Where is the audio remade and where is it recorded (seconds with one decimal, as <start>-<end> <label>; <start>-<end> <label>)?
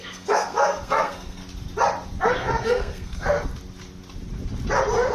0.0-1.4 remade; 1.4-2.2 recorded; 2.2-3.5 remade; 3.5-5.1 recorded